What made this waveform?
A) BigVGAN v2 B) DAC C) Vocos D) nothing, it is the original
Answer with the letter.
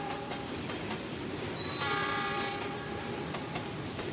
A